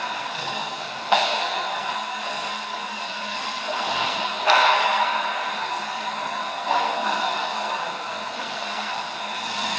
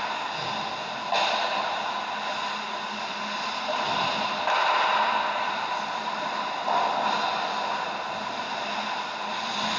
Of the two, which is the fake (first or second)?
first